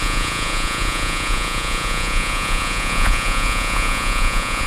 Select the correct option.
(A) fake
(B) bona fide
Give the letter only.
A